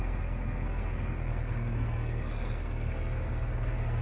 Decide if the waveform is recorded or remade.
remade